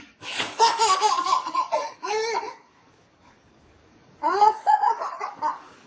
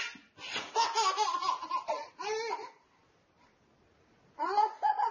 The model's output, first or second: first